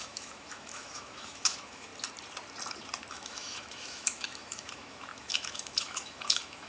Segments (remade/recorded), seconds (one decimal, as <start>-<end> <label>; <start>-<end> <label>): 0.0-1.9 remade; 1.9-3.1 recorded; 3.1-6.7 remade